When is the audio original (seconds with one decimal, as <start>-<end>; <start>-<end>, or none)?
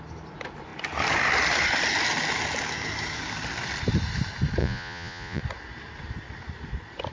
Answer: 0.0-4.6; 5.4-7.1